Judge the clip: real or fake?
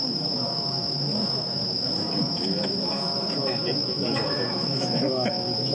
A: fake